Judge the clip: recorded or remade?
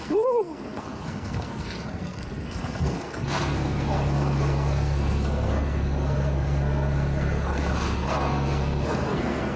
remade